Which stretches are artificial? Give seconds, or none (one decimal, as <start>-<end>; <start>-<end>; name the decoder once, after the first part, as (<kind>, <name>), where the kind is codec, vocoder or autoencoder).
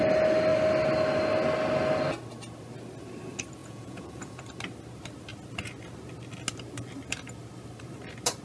3.6-4.4 (vocoder, Vocos)